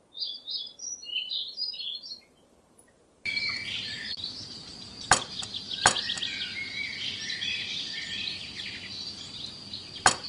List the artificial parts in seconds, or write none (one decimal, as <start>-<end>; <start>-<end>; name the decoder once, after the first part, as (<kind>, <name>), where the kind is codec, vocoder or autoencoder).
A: 1.0-3.4 (vocoder, BigVGAN v2)